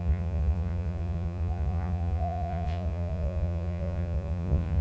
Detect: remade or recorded remade